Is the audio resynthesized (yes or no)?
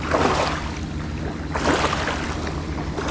no